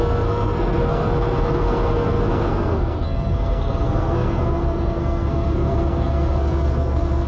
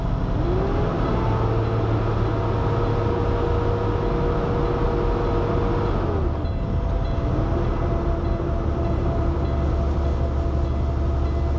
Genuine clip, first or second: second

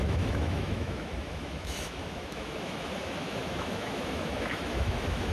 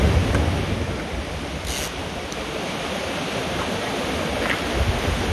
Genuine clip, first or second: second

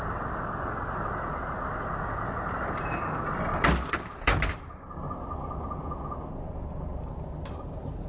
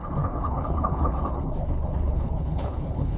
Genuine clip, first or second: first